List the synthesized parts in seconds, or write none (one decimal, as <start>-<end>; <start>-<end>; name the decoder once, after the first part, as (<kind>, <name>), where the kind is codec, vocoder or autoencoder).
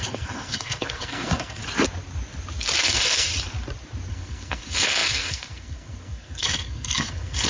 0.0-1.6 (codec, SNAC); 2.8-3.3; 4.1-7.5